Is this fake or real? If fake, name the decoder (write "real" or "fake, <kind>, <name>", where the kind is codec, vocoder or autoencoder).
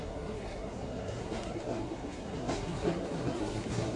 fake, codec, SNAC